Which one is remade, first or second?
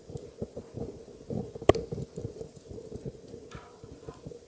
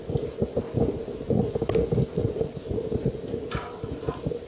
first